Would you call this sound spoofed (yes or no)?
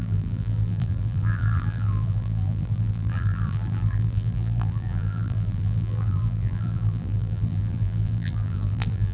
yes